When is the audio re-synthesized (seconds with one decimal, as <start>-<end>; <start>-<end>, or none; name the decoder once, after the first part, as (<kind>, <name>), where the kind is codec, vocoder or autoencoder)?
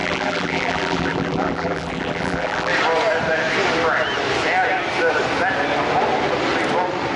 0.0-2.7 (vocoder, BigVGAN v2)